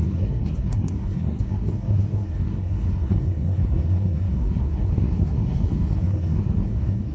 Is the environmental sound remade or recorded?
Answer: remade